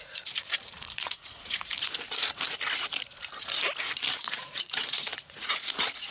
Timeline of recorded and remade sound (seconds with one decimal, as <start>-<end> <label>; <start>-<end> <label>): 0.0-1.7 remade; 1.7-4.2 recorded; 4.2-6.1 remade